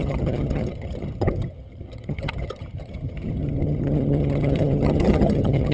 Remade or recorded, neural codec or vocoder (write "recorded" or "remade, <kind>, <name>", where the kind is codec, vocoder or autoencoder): remade, vocoder, HiFi-GAN